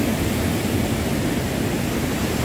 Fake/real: real